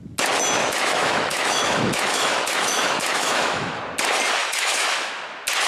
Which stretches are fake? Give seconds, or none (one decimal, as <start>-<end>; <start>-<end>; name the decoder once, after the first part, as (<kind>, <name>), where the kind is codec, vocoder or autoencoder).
0.6-3.8 (autoencoder, DAC-VAE); 4.4-5.1